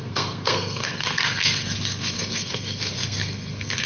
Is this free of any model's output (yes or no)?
no